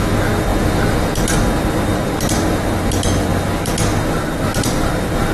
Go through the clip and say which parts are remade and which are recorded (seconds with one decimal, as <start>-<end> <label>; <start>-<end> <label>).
0.0-5.3 recorded

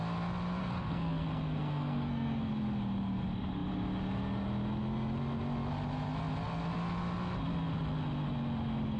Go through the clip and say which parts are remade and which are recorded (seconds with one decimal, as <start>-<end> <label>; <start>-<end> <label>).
0.0-0.6 recorded; 0.6-2.5 remade; 2.5-9.0 recorded